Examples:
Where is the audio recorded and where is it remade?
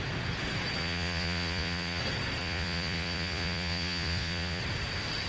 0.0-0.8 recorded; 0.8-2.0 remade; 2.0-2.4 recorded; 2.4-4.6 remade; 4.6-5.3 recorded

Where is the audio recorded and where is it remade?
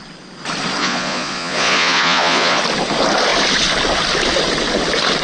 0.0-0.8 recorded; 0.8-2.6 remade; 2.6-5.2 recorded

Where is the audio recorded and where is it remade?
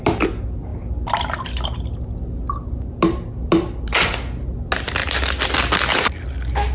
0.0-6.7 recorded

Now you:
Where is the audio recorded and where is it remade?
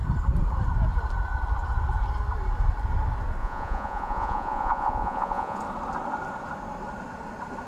0.0-3.4 recorded; 3.4-5.6 remade; 5.6-7.7 recorded